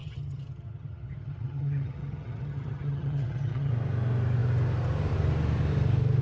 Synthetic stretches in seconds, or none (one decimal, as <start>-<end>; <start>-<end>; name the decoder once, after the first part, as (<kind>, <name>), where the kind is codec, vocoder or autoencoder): 0.0-3.7 (vocoder, HiFi-GAN)